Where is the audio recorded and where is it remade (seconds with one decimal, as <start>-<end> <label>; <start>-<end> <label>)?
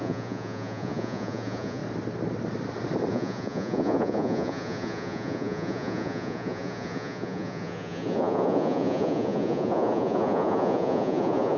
0.0-1.8 remade; 1.8-3.1 recorded; 3.1-11.6 remade